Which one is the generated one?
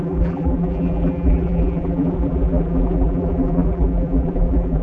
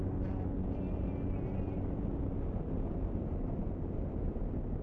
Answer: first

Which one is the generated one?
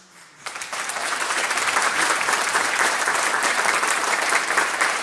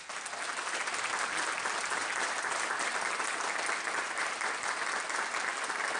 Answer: first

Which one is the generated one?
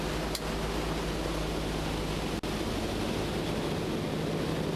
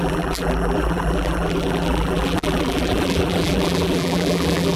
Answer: second